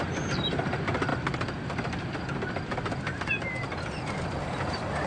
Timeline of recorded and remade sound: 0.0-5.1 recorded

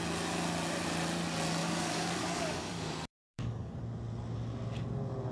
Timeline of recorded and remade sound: 0.0-1.6 recorded; 1.6-3.7 remade; 3.7-5.3 recorded

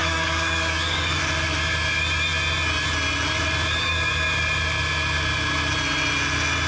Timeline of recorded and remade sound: 0.0-1.2 remade; 1.2-6.7 recorded

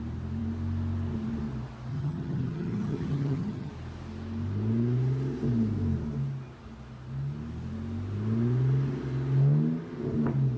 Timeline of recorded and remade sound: 0.0-1.9 recorded; 1.9-3.7 remade; 3.7-10.6 recorded

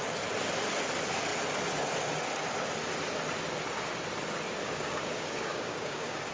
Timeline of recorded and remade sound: 0.0-4.6 recorded; 4.6-6.3 remade

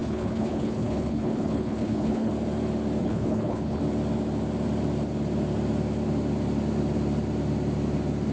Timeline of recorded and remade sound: 0.0-2.3 remade; 2.3-3.0 recorded; 3.0-3.8 remade; 3.8-8.3 recorded

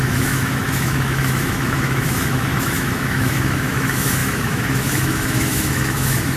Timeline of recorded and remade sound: 0.0-6.4 remade

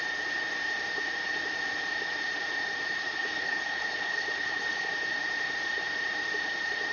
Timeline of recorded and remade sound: 0.0-3.0 recorded; 3.0-4.9 remade; 4.9-6.9 recorded